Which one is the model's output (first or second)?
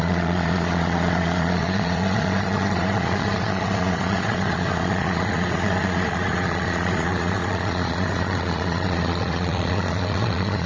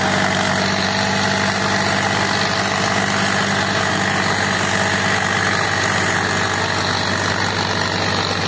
first